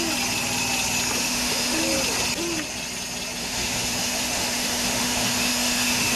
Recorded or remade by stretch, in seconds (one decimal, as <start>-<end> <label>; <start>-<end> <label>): 0.0-1.2 recorded; 1.2-1.8 remade; 1.8-3.4 recorded; 3.4-6.2 remade